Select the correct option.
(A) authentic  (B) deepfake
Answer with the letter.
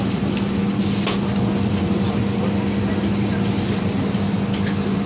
A